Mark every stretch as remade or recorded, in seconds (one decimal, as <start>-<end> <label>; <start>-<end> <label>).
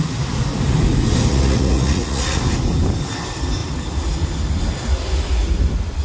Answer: 0.0-1.3 recorded; 1.3-2.4 remade; 2.4-6.0 recorded